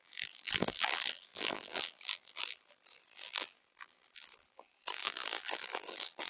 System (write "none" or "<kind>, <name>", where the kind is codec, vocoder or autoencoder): vocoder, BigVGAN v2